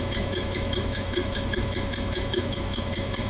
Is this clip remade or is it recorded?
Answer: remade